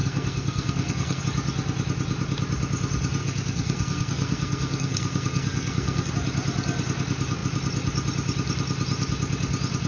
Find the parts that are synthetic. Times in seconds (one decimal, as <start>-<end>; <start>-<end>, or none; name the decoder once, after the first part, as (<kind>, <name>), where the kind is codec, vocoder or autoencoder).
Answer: 0.0-1.2 (codec, SNAC); 3.2-6.1